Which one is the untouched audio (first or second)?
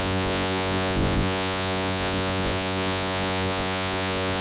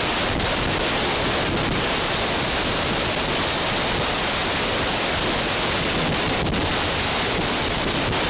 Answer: second